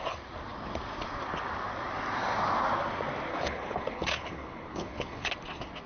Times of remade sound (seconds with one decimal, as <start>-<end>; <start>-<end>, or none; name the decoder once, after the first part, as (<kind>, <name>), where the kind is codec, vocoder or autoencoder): 3.3-5.3 (codec, HILCodec)